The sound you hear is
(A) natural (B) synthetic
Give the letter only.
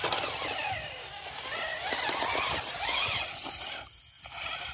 B